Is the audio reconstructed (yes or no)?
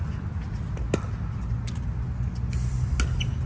no